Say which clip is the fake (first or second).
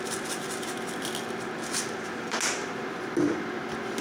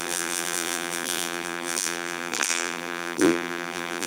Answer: second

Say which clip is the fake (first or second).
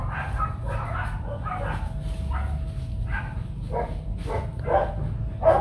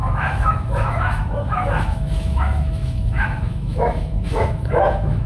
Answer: second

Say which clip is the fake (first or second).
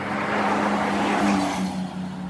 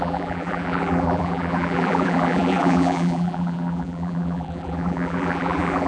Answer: second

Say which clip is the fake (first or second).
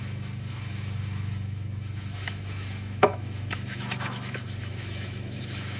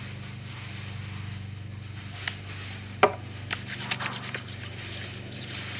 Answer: first